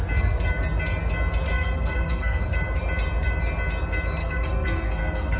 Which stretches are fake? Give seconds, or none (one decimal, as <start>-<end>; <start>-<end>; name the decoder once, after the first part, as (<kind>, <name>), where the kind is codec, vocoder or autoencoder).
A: 1.5-2.4 (codec, SNAC); 4.2-5.4